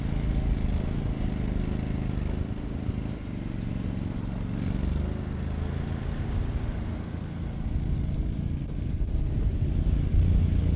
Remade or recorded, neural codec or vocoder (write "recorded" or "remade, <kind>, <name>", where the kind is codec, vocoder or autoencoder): recorded